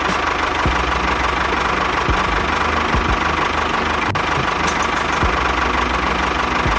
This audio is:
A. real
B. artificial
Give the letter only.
A